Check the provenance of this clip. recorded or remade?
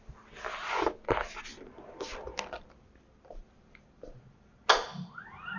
recorded